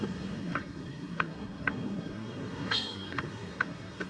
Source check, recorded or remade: remade